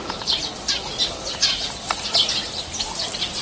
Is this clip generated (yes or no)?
no